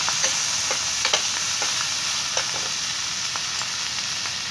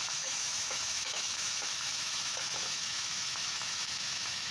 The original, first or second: first